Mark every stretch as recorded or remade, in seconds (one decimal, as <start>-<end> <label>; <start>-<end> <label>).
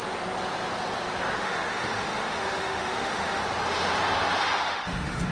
0.0-1.4 recorded; 1.4-3.4 remade; 3.4-4.4 recorded; 4.4-5.3 remade